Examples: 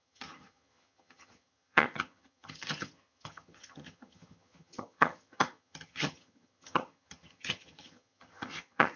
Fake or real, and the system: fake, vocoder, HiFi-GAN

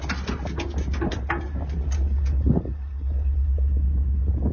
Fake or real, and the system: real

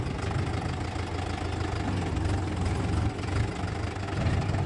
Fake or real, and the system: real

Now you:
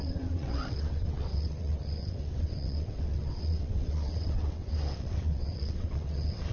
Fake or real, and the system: fake, vocoder, WaveNeXt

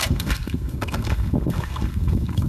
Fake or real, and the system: fake, codec, SNAC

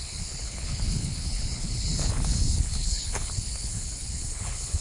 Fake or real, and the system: fake, codec, HILCodec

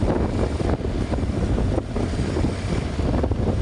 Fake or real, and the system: real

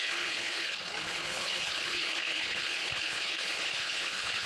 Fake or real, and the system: fake, codec, HILCodec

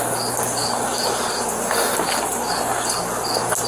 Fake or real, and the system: real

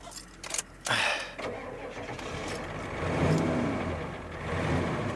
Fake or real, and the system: real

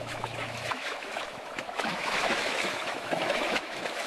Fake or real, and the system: fake, autoencoder, DAC-VAE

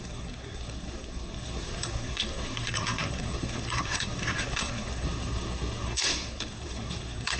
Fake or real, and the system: fake, codec, SNAC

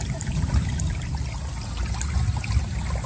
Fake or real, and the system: real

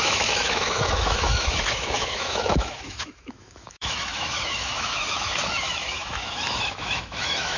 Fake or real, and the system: fake, autoencoder, DAC-VAE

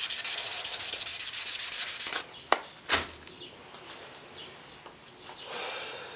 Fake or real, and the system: real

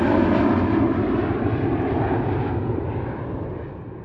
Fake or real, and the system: real